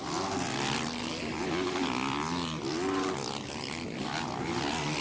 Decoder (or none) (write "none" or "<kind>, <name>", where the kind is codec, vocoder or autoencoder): none